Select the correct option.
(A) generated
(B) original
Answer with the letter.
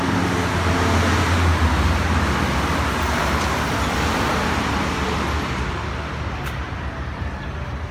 B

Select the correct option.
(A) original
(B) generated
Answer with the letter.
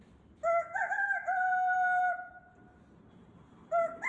A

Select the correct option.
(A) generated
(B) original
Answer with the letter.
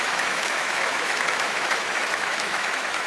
A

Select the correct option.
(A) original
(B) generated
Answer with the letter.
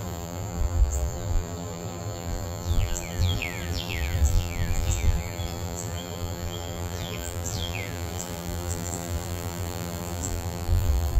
B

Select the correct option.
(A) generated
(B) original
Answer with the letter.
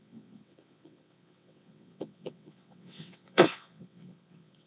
A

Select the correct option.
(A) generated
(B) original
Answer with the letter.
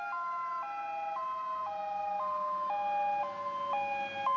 B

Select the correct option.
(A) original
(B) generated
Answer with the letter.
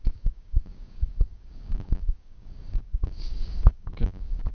B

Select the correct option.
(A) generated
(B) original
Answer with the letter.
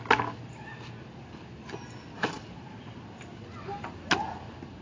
B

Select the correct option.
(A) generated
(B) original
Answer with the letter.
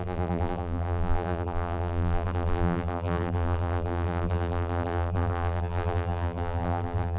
A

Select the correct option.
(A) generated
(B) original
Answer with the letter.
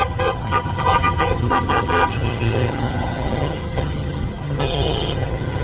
A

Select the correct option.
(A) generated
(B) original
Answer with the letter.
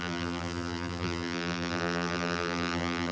A